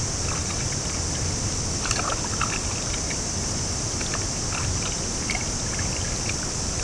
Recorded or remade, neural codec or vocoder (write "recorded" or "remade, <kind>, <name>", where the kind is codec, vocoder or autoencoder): recorded